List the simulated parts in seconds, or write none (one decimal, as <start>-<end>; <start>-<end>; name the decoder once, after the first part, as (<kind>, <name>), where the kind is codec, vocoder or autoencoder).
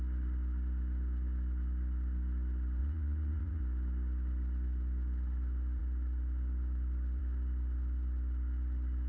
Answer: 2.8-3.6 (vocoder, Vocos)